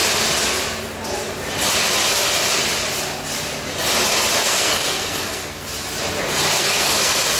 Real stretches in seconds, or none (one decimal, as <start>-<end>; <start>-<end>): 0.0-4.4; 5.7-6.5